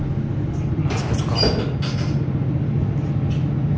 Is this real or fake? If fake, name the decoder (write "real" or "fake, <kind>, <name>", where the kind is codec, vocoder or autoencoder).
real